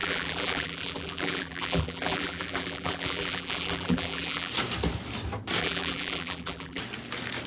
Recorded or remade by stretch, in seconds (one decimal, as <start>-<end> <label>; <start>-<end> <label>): 0.0-4.5 remade; 4.5-5.6 recorded; 5.6-6.8 remade; 6.8-7.5 recorded